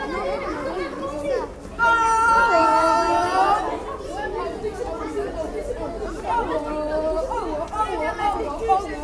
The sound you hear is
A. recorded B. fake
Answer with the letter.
A